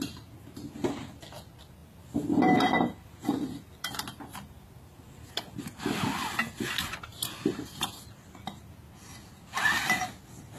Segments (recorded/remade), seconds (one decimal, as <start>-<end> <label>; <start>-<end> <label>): 0.0-1.8 recorded; 1.8-5.3 remade; 5.3-7.1 recorded; 7.1-7.7 remade; 7.7-10.6 recorded